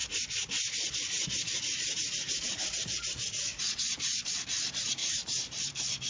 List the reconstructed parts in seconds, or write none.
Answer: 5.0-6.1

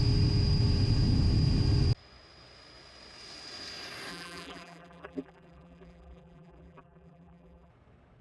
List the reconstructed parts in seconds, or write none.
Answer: 4.1-7.7

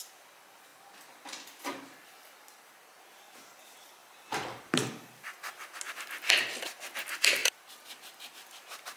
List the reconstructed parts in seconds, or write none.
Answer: 4.0-5.8; 7.4-9.0

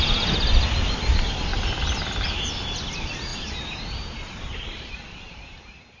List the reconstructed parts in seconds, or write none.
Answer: 1.5-2.5; 3.3-6.0